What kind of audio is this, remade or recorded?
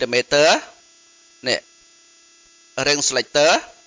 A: recorded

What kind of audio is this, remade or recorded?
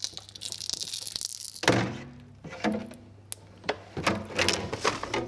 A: recorded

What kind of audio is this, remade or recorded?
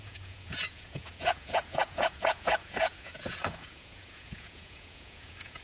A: remade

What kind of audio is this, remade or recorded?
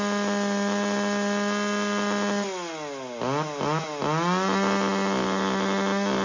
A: recorded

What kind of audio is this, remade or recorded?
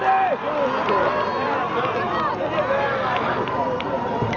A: recorded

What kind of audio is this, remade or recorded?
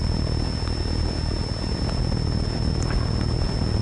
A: recorded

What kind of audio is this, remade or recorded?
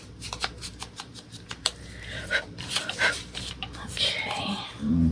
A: remade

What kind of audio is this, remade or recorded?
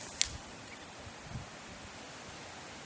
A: recorded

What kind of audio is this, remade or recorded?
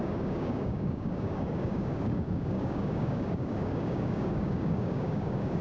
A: remade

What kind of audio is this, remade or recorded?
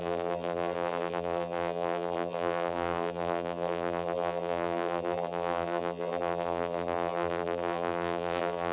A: remade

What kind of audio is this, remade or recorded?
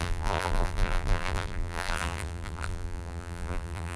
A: remade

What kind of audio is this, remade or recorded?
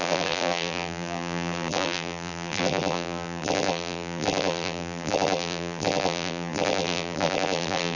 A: remade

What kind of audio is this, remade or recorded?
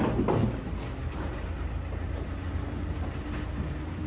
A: recorded